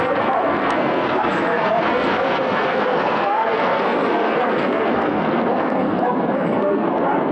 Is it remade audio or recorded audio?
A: remade